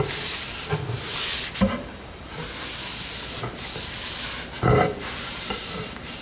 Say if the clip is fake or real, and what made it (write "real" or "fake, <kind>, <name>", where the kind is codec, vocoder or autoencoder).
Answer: real